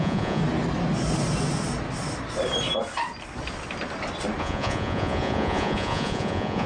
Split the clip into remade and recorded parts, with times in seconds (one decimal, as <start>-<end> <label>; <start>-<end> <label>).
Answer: 0.0-0.4 remade; 0.4-4.4 recorded; 4.4-6.7 remade